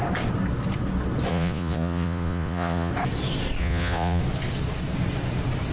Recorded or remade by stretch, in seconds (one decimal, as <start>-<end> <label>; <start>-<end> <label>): 0.0-1.3 recorded; 1.3-2.9 remade; 2.9-3.6 recorded; 3.6-4.2 remade; 4.2-5.7 recorded